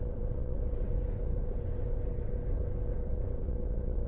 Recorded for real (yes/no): no